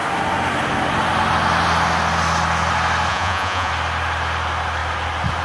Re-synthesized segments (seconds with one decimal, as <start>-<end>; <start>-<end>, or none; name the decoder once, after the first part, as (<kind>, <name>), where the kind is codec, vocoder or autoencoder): 3.1-3.7 (vocoder, Vocos)